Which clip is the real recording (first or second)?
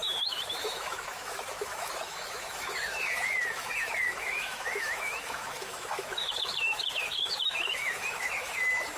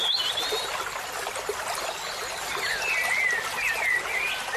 second